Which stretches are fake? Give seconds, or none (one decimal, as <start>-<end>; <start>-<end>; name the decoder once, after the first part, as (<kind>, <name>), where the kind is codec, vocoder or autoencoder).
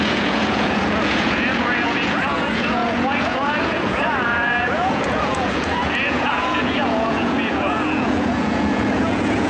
0.0-9.5 (vocoder, Vocos)